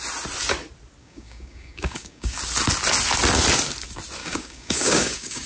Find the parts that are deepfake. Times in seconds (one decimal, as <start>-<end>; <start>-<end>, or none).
1.0-2.4; 4.2-5.5